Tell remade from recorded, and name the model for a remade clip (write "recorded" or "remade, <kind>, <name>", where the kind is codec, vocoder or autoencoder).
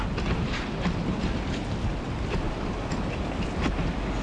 recorded